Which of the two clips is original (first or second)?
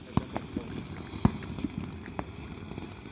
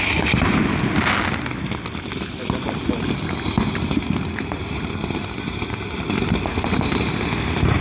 first